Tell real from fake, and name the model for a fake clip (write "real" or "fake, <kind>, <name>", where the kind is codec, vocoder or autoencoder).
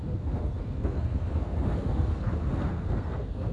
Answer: fake, codec, SNAC